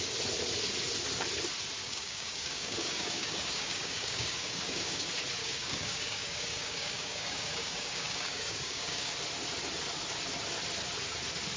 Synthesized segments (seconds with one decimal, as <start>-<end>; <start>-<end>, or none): 1.8-5.0; 5.4-9.1